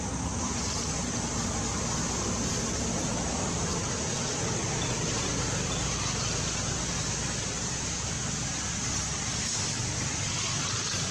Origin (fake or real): real